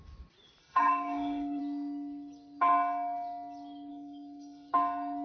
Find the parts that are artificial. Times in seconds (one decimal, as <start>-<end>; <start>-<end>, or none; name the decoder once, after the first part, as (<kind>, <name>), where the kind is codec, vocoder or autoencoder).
0.6-1.6 (codec, SNAC); 3.9-4.7